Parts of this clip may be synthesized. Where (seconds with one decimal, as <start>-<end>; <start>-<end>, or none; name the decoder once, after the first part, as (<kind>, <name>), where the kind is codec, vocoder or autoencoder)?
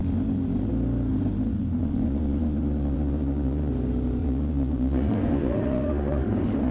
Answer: 1.8-3.7 (vocoder, Vocos); 4.2-6.7